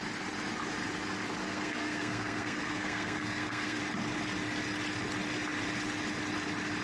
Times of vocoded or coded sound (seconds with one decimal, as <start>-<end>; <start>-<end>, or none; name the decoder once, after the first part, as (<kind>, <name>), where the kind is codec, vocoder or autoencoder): 1.4-3.8 (codec, SNAC)